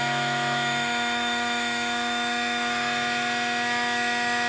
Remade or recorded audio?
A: remade